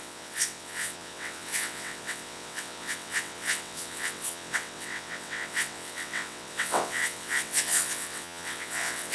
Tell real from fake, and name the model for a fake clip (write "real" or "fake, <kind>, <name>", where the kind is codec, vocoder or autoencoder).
fake, vocoder, WaveNeXt